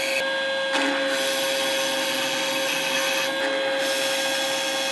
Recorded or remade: recorded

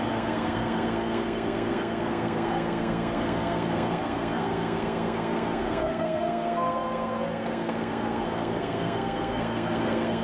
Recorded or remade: remade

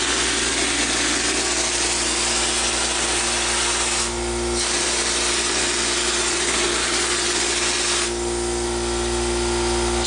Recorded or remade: recorded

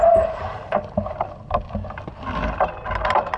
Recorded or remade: recorded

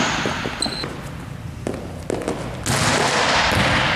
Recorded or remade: recorded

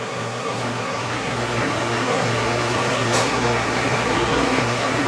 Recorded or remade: remade